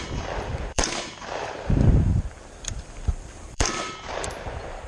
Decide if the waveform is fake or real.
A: fake